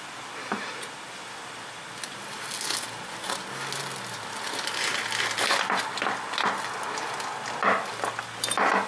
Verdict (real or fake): real